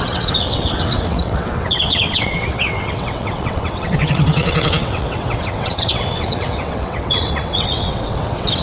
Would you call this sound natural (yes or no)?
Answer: no